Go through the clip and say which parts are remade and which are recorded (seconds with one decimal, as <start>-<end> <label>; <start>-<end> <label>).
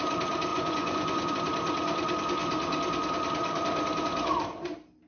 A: 0.0-0.5 recorded; 0.5-1.3 remade; 1.3-5.1 recorded